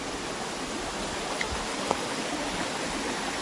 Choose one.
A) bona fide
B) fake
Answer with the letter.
A